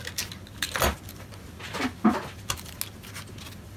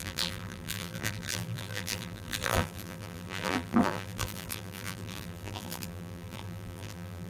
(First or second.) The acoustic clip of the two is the first